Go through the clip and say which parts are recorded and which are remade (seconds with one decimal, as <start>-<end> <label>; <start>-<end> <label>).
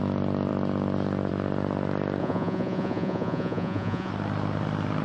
0.0-2.2 recorded; 2.2-4.1 remade; 4.1-5.0 recorded